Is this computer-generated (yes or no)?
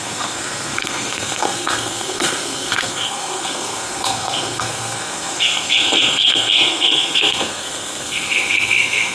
yes